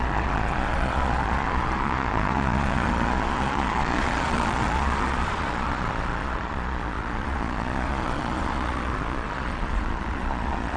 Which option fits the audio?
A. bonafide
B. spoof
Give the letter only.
B